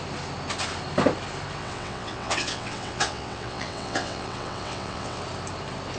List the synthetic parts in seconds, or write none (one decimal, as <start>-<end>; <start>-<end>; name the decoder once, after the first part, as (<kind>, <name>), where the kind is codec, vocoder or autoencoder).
1.6-5.2 (vocoder, WaveNeXt)